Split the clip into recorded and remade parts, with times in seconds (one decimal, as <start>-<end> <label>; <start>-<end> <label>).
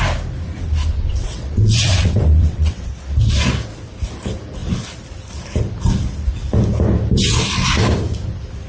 0.0-0.9 recorded; 0.9-2.9 remade; 2.9-8.7 recorded